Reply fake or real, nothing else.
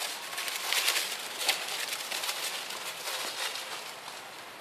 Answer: real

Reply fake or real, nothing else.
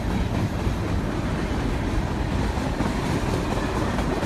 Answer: real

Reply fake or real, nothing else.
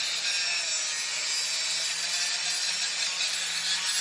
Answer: real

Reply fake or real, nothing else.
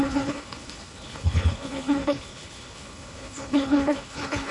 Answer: fake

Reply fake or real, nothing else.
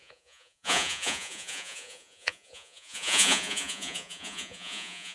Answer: fake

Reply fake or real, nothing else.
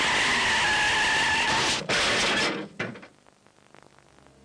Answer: real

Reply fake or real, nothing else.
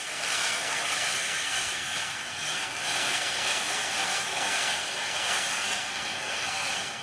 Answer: fake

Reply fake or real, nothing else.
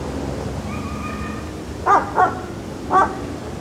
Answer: real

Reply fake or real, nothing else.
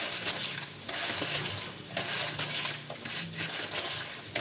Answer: real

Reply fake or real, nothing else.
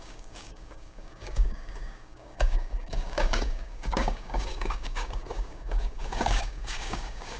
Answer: fake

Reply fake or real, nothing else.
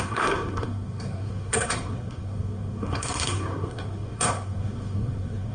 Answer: fake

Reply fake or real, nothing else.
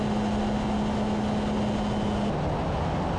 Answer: real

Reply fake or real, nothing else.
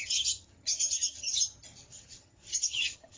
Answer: fake